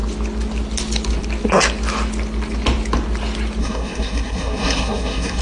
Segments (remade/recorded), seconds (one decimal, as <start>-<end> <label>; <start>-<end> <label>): 0.0-3.6 recorded; 3.6-5.4 remade